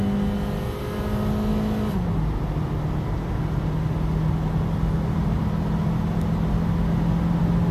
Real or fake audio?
real